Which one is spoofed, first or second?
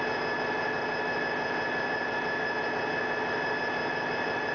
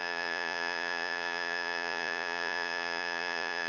second